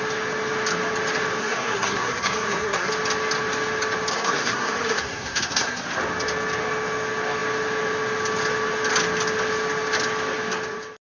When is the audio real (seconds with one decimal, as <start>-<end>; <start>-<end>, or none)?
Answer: 0.0-1.4; 2.9-4.1; 5.8-11.0